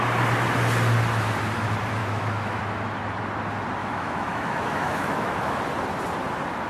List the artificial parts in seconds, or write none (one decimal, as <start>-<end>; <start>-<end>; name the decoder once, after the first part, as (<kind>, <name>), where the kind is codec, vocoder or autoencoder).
2.0-2.6 (autoencoder, DAC-VAE); 3.8-5.6

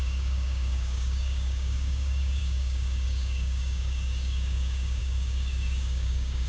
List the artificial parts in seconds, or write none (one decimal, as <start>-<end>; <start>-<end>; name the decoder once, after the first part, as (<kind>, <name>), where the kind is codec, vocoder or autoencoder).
0.0-6.5 (codec, DAC)

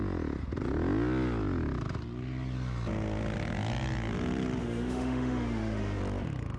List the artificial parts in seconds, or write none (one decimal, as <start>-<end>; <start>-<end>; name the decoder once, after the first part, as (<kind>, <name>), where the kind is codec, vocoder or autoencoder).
4.6-6.0 (autoencoder, DAC-VAE)

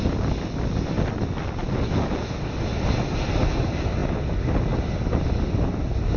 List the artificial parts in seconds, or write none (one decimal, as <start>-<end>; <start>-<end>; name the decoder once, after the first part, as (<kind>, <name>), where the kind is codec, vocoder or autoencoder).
none

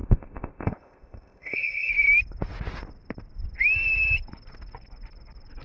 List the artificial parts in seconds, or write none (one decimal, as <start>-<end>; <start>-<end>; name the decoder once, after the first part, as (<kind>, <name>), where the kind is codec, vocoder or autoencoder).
0.0-1.9 (codec, ZipCodec)

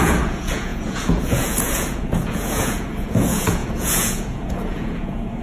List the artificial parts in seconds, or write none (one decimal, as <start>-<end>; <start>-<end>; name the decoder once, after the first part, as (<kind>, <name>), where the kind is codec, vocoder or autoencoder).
0.0-5.4 (vocoder, Vocos)

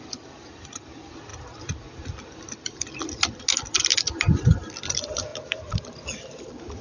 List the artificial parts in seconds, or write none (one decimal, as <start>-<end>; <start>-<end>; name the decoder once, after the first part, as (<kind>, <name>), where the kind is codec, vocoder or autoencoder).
3.9-4.4 (vocoder, BigVGAN v2); 5.3-6.8